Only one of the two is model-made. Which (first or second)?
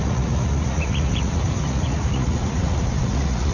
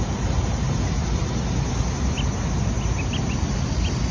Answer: first